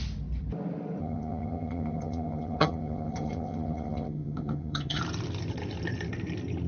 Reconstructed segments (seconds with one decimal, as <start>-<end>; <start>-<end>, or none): 1.0-5.0